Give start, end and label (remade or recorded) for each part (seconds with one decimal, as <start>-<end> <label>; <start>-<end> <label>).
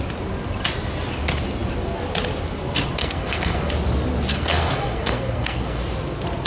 0.0-3.0 recorded; 3.0-3.7 remade; 3.7-4.3 recorded; 4.3-5.8 remade; 5.8-6.5 recorded